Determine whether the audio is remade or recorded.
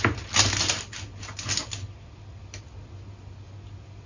recorded